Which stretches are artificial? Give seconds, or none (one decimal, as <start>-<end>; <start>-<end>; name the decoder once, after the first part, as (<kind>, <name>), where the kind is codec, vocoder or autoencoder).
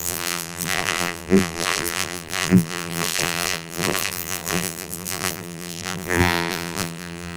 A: 0.0-7.4 (vocoder, BigVGAN v2)